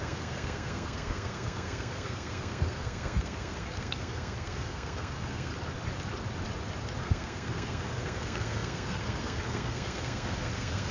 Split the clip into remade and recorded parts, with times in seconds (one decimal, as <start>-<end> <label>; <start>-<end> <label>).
0.0-5.5 remade; 5.5-7.0 recorded; 7.0-10.9 remade